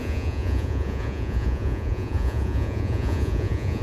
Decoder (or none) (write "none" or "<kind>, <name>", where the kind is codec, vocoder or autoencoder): vocoder, Vocos